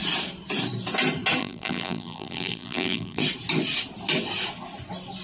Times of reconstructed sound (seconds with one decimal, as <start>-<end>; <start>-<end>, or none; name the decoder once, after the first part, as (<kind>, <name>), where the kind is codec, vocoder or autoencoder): 1.4-3.2 (vocoder, BigVGAN v2)